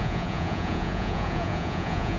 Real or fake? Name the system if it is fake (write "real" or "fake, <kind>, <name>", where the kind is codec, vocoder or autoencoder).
fake, vocoder, Vocos